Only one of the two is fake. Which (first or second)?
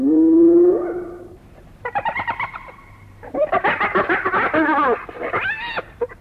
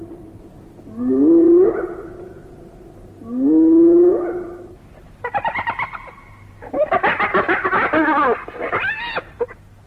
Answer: first